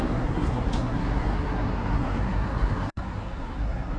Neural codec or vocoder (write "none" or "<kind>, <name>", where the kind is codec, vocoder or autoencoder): codec, SNAC